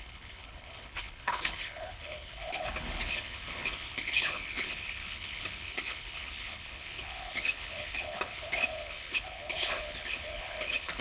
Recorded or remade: remade